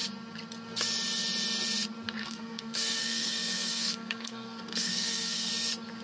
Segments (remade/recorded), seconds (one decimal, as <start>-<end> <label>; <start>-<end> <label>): 0.0-2.2 recorded; 2.2-5.5 remade; 5.5-6.0 recorded